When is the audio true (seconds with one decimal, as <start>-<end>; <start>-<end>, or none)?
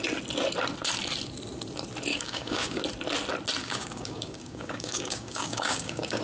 0.0-2.1; 2.8-3.6